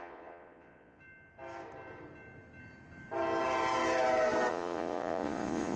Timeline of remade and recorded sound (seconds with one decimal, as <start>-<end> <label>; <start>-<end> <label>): 0.0-1.0 remade; 1.0-4.5 recorded; 4.5-5.8 remade